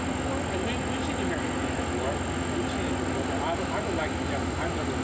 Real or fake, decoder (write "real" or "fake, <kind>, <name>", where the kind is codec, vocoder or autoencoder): real